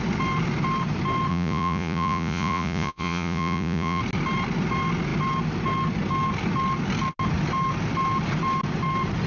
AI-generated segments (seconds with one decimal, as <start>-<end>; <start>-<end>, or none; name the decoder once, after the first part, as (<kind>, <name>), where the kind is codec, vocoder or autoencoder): 1.3-4.0 (vocoder, Vocos)

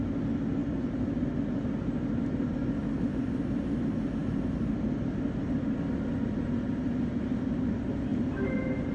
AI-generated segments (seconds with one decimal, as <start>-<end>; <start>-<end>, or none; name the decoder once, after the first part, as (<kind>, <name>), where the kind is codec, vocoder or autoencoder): 0.6-1.2 (vocoder, BigVGAN v2)

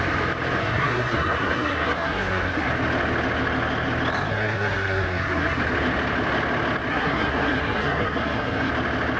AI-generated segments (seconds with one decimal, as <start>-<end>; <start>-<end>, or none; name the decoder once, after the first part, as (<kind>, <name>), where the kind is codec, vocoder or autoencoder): 0.6-2.7 (codec, SNAC); 4.3-5.6; 6.9-8.7

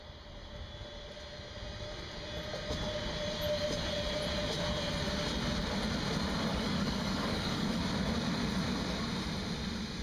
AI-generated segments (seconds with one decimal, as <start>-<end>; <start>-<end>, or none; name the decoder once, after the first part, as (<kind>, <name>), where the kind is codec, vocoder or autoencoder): 6.5-7.8 (codec, DAC)

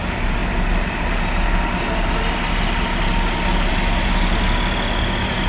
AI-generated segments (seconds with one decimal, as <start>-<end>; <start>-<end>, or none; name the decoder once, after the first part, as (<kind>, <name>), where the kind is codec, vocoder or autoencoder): none